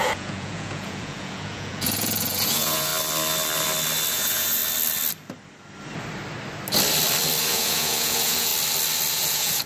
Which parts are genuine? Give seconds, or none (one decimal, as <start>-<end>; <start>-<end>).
2.9-4.1; 4.6-7.4; 8.5-9.1